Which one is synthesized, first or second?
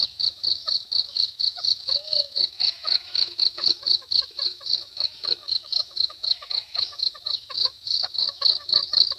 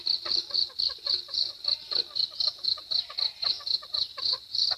first